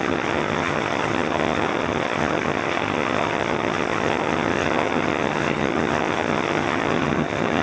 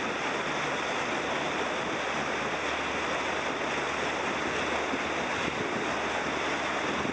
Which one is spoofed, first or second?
first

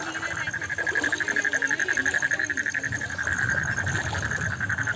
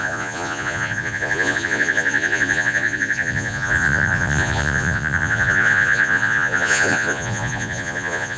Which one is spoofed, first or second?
second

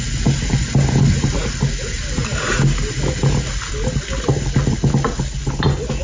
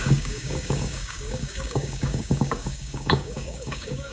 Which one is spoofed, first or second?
second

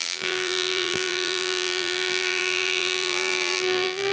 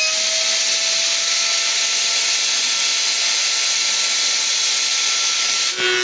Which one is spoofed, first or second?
first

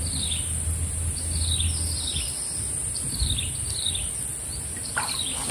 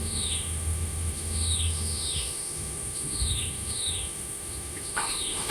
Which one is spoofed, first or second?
second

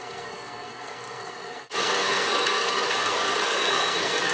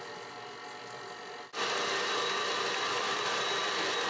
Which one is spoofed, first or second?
first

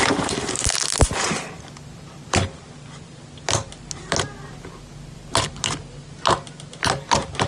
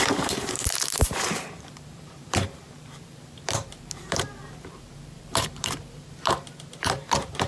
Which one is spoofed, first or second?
second